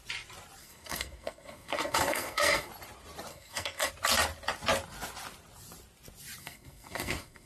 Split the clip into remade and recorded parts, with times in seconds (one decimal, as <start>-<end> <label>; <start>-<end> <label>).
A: 0.0-0.6 recorded; 0.6-2.7 remade; 2.7-3.3 recorded; 3.3-3.9 remade; 3.9-6.4 recorded; 6.4-7.5 remade